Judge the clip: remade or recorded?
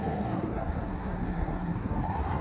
remade